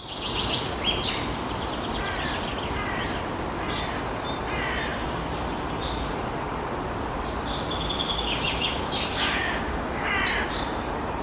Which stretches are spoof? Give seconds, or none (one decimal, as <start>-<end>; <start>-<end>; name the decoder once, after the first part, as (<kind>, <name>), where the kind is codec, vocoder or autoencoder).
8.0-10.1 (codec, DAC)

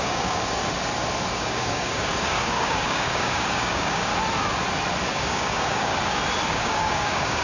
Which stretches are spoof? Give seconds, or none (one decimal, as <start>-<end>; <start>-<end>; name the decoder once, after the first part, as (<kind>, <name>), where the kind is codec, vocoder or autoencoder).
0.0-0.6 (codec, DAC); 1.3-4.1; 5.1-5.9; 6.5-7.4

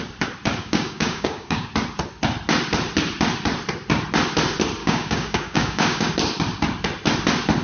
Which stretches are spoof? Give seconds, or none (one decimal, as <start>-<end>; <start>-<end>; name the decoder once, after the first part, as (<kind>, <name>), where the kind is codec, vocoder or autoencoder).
0.6-1.7 (codec, DAC); 4.8-6.1